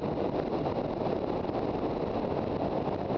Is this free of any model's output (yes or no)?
yes